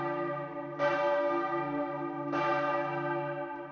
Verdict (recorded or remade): recorded